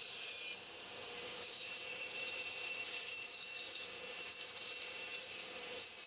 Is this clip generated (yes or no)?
yes